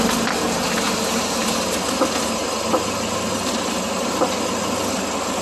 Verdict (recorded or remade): recorded